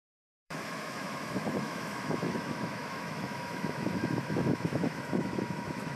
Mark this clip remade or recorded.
remade